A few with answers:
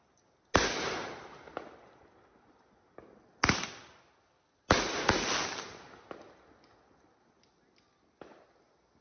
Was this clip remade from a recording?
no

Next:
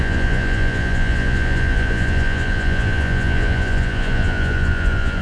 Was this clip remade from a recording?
yes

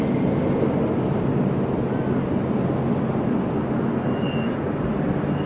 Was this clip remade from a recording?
no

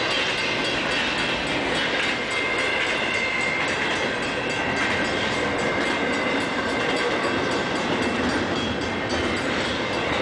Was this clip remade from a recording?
no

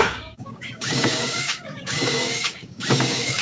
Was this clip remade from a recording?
yes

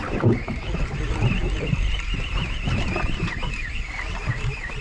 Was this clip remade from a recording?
yes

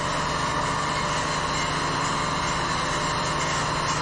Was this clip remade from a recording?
no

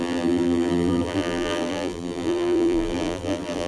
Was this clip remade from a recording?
yes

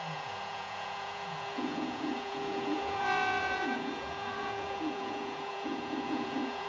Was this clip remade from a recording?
yes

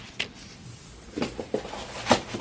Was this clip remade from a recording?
no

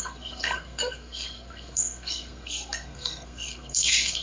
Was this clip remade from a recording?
yes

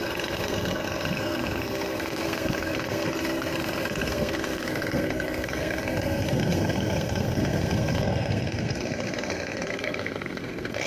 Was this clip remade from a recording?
yes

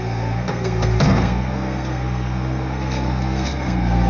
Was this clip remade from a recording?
yes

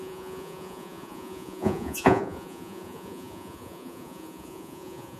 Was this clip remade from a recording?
yes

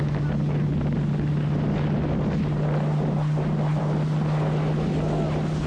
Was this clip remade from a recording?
no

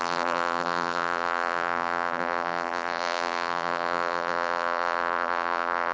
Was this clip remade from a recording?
yes